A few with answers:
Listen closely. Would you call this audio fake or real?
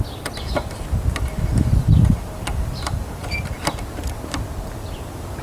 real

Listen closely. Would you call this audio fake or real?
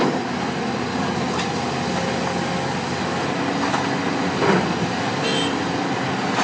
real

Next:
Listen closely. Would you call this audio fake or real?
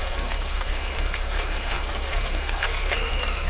fake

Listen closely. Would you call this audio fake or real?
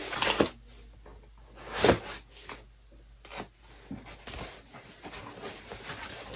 real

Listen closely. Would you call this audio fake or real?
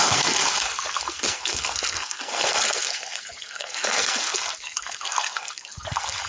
fake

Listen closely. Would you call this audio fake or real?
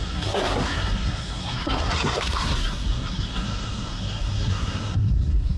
fake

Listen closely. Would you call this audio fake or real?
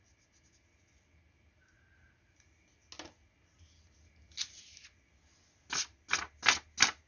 real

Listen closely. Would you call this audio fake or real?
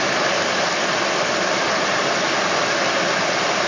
real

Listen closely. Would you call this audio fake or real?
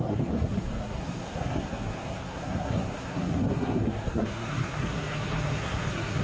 fake